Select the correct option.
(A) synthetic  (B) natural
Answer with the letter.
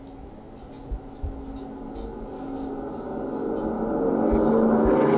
B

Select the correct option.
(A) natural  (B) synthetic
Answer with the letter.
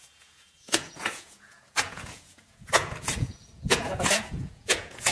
B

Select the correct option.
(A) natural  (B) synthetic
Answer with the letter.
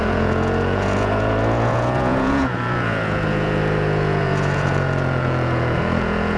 B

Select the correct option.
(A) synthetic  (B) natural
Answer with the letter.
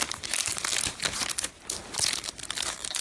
B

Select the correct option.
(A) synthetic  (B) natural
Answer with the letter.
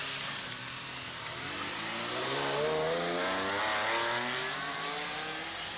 B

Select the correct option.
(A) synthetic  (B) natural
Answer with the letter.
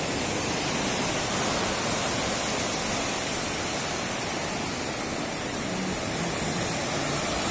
B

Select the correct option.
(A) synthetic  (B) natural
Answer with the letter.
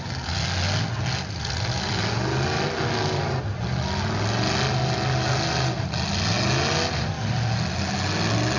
B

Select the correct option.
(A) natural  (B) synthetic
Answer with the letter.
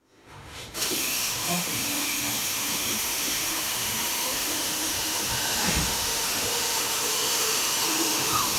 B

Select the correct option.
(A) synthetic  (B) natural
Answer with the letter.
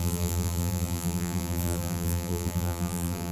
A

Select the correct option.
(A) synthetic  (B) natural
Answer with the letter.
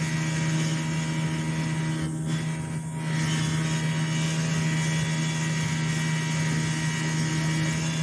B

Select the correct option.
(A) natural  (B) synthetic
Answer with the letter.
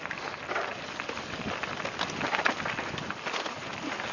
A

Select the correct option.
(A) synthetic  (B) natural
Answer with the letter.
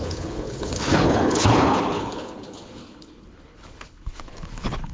A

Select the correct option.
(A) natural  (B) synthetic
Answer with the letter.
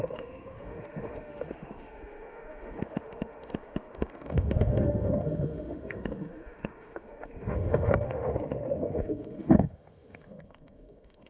B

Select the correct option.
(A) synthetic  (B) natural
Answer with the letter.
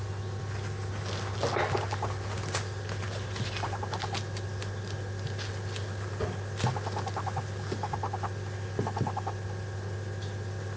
B